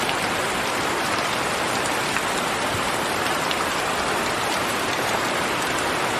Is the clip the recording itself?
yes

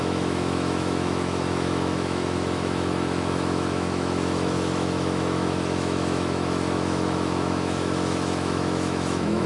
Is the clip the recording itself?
no